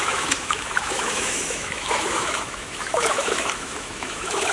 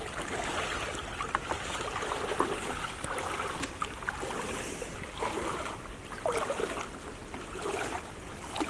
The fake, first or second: first